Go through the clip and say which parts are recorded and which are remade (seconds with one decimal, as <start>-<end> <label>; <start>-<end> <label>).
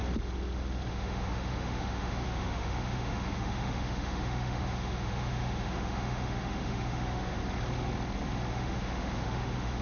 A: 0.0-0.9 recorded; 0.9-7.4 remade; 7.4-8.5 recorded; 8.5-9.8 remade